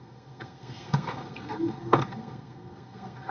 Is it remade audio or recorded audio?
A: remade